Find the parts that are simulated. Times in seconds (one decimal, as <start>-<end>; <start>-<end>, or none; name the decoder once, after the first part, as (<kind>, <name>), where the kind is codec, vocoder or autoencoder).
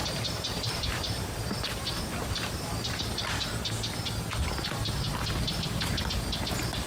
0.0-2.9 (vocoder, BigVGAN v2)